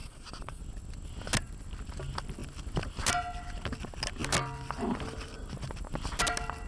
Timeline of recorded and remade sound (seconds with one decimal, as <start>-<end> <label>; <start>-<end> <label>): 0.0-0.6 remade; 0.6-6.7 recorded